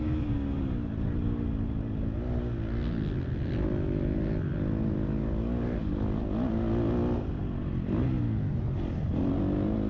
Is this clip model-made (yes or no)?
no